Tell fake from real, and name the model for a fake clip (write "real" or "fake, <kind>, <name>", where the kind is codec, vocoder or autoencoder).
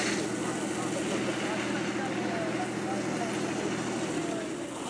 real